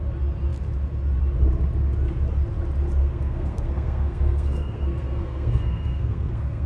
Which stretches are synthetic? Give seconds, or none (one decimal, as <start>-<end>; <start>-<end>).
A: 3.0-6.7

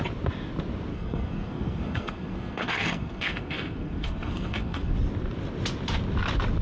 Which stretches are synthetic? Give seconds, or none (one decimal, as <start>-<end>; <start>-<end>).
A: 0.9-4.9

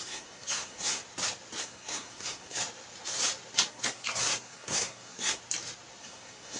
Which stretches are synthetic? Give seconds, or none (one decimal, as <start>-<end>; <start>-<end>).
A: 0.0-1.0; 1.6-2.6; 3.7-5.4; 6.0-6.6